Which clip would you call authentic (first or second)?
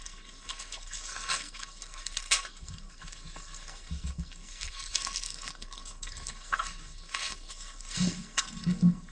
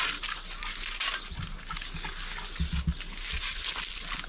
second